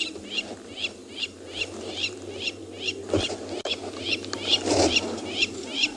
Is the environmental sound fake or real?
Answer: real